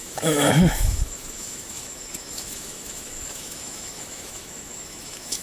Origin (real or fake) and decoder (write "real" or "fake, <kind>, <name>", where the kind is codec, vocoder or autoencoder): fake, autoencoder, DAC-VAE